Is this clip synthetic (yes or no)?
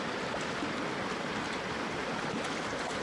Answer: no